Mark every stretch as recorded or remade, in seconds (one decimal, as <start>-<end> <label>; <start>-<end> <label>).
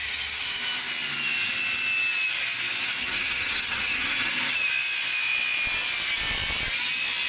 0.0-0.6 remade; 0.6-3.0 recorded; 3.0-4.3 remade; 4.3-7.3 recorded